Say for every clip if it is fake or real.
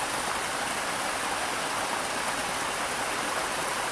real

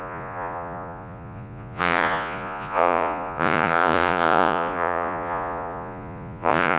fake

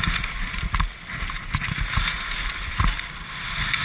real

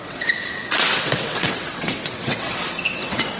fake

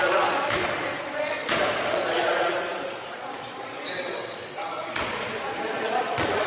fake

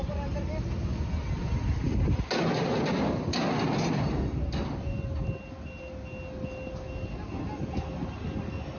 real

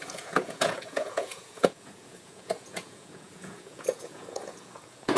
fake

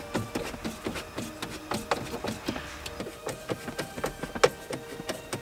real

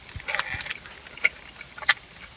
real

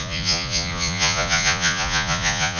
fake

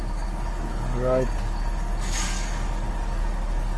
fake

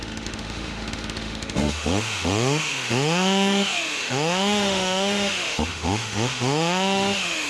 fake